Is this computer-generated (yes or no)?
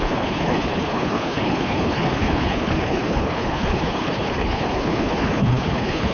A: yes